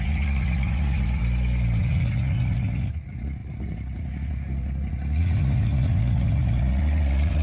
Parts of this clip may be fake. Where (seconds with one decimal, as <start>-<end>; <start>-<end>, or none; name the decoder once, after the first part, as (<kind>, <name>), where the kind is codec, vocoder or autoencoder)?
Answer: 0.0-1.2 (vocoder, Vocos); 1.8-7.4